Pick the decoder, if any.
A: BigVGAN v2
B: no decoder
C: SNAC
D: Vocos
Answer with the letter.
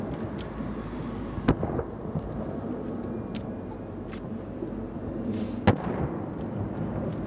B